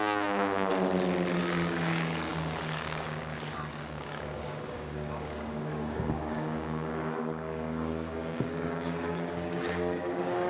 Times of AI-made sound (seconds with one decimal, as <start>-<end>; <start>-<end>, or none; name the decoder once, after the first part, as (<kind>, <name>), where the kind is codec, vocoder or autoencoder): 0.0-0.7 (codec, DAC); 1.4-10.5